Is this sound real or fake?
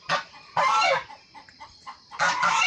real